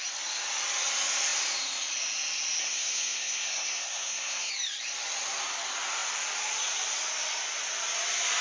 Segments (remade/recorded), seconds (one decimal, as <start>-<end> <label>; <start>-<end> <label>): 0.0-2.6 recorded; 2.6-4.5 remade; 4.5-8.4 recorded